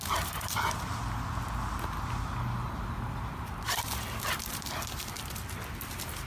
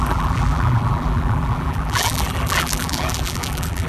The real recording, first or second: first